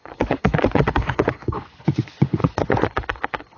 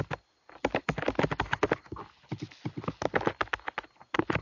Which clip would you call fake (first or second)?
first